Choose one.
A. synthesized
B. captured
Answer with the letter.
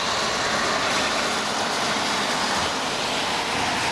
B